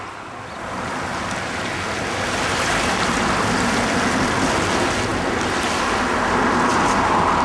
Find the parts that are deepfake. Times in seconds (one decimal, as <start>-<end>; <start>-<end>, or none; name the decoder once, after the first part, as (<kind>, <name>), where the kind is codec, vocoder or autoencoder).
none